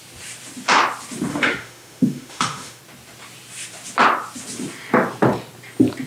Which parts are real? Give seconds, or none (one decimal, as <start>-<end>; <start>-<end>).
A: 0.0-1.3; 2.8-6.1